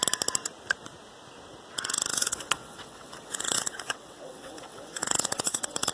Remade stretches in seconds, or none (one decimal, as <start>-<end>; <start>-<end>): 2.1-5.9

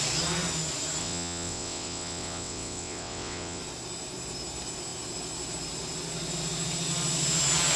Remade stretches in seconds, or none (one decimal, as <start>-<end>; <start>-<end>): 1.0-3.6

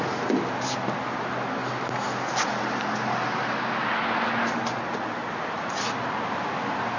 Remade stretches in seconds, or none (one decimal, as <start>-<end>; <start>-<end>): none